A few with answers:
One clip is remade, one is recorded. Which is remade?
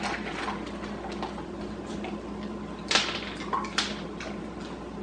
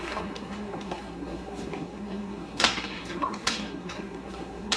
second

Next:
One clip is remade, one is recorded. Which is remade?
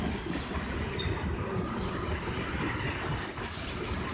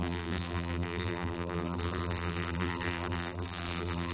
second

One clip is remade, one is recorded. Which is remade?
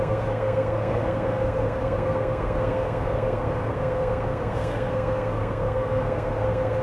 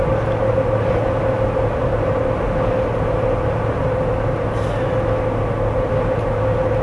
first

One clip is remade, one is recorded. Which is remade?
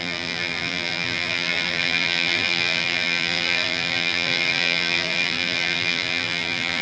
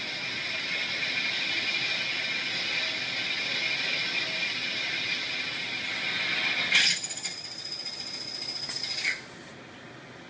first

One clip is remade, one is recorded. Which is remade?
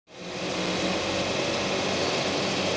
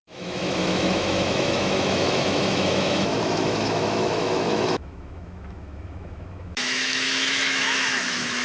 second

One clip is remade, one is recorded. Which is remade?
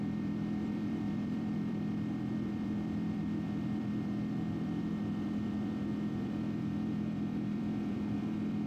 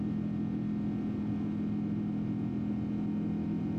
first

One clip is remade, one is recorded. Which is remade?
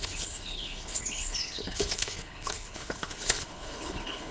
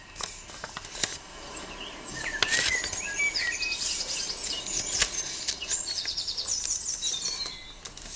first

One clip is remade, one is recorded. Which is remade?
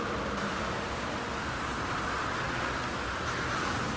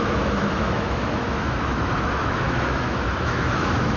second